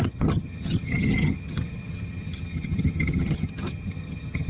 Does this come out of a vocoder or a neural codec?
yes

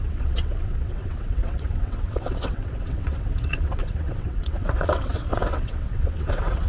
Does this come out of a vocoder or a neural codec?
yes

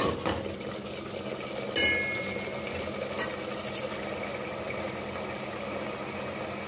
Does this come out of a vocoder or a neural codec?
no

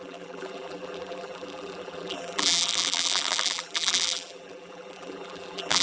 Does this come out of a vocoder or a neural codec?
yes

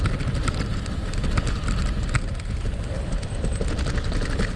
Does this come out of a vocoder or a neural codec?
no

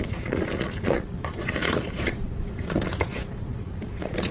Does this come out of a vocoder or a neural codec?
yes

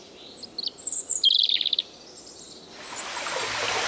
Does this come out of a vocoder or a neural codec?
no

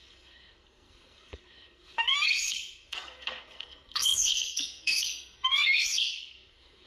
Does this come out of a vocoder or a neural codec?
yes